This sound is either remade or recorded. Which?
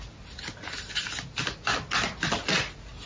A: recorded